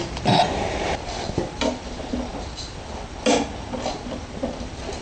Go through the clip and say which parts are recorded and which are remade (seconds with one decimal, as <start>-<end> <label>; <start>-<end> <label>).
0.0-5.0 recorded